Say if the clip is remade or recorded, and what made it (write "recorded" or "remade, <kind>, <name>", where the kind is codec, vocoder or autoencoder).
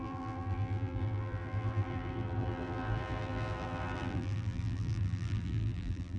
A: remade, vocoder, BigVGAN v2